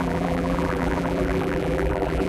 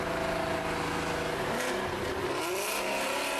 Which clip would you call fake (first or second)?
first